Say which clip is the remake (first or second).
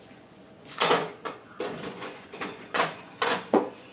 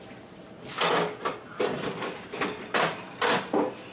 first